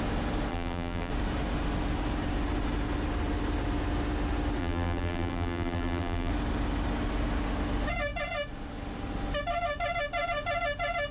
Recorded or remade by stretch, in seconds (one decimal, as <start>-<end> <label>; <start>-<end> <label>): 0.0-0.5 recorded; 0.5-1.1 remade; 1.1-4.6 recorded; 4.6-6.3 remade; 6.3-11.1 recorded